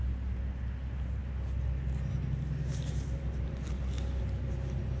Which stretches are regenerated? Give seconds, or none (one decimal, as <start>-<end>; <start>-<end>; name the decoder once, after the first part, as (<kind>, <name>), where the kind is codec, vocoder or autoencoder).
none